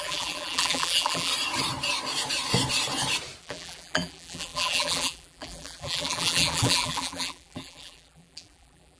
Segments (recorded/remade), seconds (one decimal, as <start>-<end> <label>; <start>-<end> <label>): 0.0-1.3 remade; 1.3-3.4 recorded; 3.4-9.0 remade